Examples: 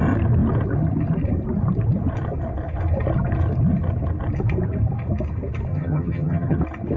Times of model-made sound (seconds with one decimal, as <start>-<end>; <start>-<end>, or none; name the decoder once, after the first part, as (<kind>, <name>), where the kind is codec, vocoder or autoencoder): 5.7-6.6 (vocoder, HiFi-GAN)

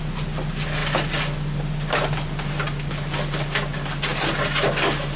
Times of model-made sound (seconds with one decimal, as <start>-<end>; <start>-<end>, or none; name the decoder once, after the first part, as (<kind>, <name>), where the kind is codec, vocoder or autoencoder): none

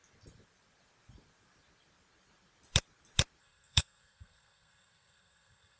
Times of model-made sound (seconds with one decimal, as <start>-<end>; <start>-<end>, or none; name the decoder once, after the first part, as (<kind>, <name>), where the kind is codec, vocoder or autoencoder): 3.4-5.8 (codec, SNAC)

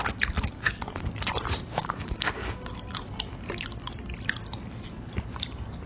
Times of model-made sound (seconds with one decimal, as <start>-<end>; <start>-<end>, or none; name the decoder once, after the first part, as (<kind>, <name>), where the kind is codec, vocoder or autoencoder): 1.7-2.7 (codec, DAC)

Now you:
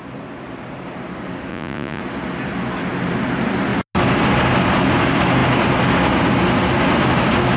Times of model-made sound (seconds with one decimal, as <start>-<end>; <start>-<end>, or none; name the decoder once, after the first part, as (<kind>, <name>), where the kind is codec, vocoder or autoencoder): 1.5-2.0 (vocoder, Vocos)